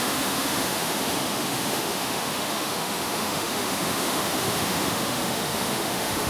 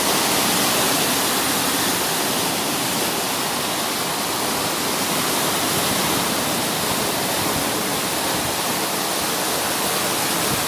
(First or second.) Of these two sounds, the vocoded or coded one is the first